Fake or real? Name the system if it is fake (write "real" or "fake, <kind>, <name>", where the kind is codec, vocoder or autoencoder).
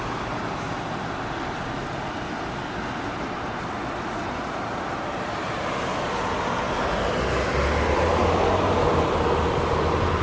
real